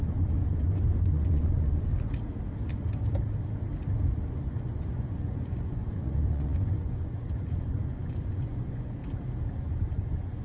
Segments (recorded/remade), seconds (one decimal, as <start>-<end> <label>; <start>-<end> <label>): 0.0-1.9 remade; 1.9-4.3 recorded; 4.3-9.0 remade; 9.0-9.6 recorded; 9.6-10.4 remade